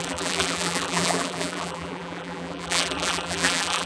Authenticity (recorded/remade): remade